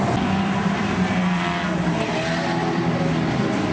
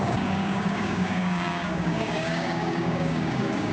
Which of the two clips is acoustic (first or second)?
first